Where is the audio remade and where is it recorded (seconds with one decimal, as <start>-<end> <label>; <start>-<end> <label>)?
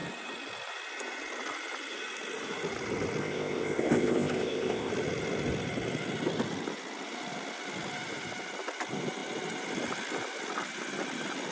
0.0-3.2 recorded; 3.2-4.9 remade; 4.9-11.5 recorded